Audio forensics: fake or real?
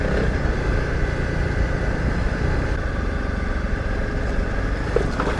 real